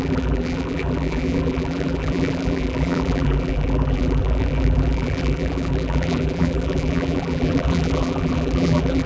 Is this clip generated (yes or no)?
yes